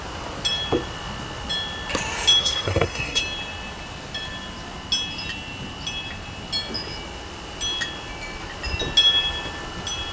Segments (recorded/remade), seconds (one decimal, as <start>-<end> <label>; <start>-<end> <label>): 0.0-2.4 recorded; 2.4-3.2 remade; 3.2-10.1 recorded